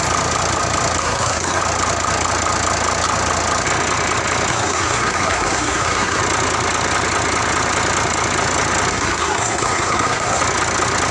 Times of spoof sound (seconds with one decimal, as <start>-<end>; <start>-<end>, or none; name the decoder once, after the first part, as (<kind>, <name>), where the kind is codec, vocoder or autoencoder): 1.0-1.6 (codec, SNAC); 4.5-6.2; 8.9-10.4